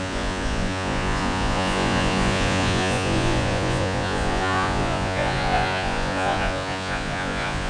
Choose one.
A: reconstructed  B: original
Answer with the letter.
A